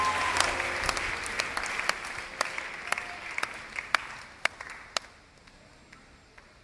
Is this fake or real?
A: real